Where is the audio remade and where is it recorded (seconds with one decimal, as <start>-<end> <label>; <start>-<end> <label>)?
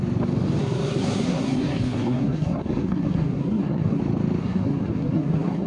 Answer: 0.0-0.6 recorded; 0.6-4.0 remade; 4.0-4.4 recorded; 4.4-5.7 remade